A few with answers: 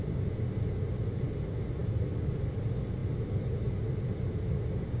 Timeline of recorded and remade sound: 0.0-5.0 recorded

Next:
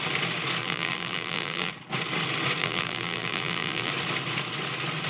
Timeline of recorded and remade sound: 0.0-0.6 recorded; 0.6-1.7 remade; 1.7-2.6 recorded; 2.6-3.9 remade; 3.9-5.1 recorded

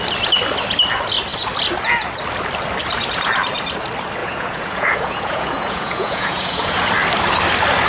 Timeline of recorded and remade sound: 0.0-4.2 recorded; 4.2-6.9 remade; 6.9-7.9 recorded

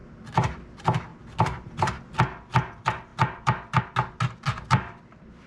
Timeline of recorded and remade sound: 0.0-5.5 recorded

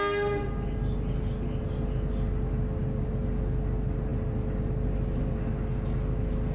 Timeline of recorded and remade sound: 0.0-6.5 recorded

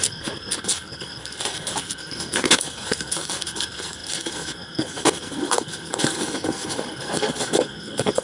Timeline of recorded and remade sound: 0.0-8.2 remade

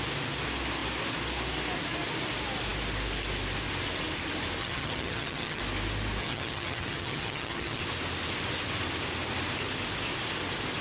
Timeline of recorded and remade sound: 0.0-4.6 recorded; 4.6-5.6 remade; 5.6-6.2 recorded; 6.2-7.8 remade; 7.8-10.8 recorded

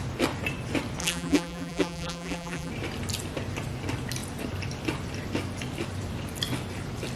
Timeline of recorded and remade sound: 0.0-1.0 recorded; 1.0-2.7 remade; 2.7-7.2 recorded